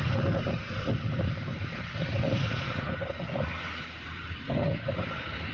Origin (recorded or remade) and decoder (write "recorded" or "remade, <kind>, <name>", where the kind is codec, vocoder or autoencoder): remade, vocoder, BigVGAN v2